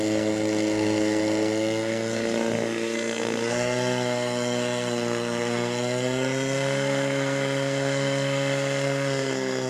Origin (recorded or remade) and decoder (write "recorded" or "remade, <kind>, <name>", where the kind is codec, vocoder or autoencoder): remade, codec, SNAC